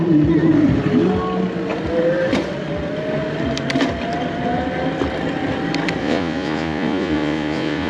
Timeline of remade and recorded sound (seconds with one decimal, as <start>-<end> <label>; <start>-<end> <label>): 0.0-6.0 recorded; 6.0-7.9 remade